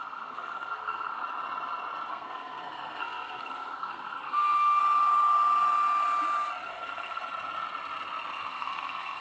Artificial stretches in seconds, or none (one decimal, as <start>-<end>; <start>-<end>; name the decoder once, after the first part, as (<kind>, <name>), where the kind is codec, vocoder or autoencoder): 0.0-1.2 (codec, SNAC); 2.1-4.8; 6.7-7.2; 8.5-9.2